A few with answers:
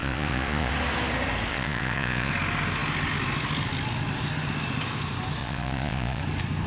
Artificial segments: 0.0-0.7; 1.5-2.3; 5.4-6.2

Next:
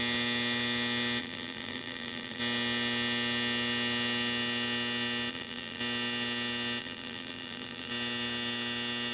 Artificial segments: 1.2-2.4; 5.3-5.8; 6.8-7.9

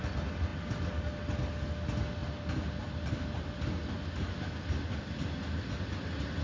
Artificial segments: none

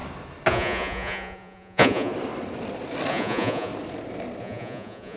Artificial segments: 0.5-2.1; 3.1-3.7; 4.4-5.2

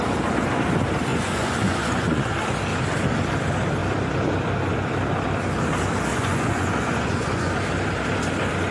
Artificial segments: 1.1-2.3; 6.1-7.5

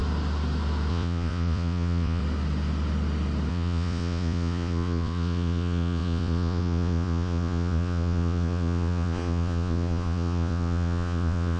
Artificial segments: 0.9-2.2; 3.5-11.6

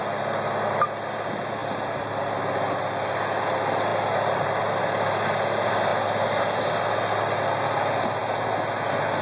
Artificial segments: none

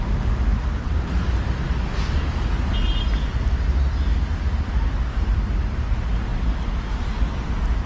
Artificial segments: none